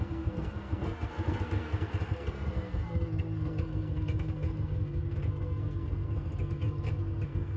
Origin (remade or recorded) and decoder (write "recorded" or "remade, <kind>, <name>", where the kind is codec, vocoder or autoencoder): remade, codec, SNAC